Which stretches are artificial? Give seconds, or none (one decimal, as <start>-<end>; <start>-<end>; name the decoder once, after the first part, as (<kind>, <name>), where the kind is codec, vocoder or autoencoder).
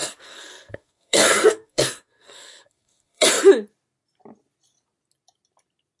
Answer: 0.0-3.3 (codec, SNAC)